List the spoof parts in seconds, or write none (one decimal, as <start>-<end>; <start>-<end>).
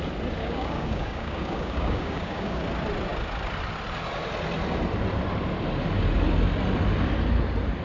0.4-2.6